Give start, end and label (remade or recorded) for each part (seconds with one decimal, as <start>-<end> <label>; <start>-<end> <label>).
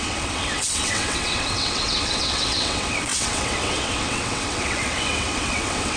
0.0-6.0 remade